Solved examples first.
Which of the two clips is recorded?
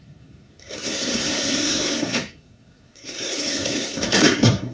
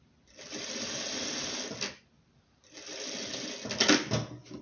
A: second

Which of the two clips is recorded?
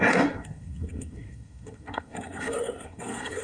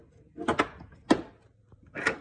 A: second